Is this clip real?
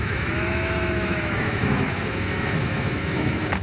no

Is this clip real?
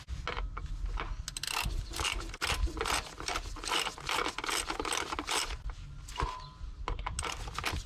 yes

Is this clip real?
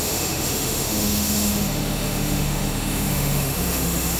no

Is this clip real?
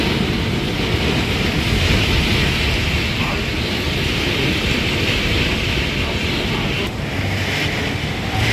yes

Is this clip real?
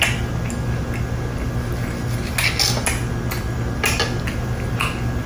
yes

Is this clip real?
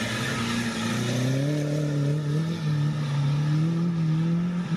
yes